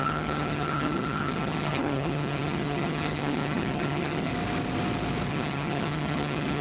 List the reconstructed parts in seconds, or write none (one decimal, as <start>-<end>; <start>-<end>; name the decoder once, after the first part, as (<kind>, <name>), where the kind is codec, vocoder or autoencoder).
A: 0.0-4.3 (vocoder, HiFi-GAN); 5.3-6.6